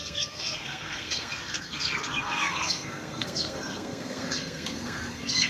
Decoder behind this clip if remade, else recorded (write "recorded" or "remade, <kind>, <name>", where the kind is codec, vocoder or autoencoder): remade, codec, SNAC